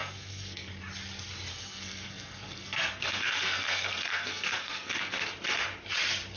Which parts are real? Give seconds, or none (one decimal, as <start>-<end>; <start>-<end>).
0.7-1.5; 5.3-6.4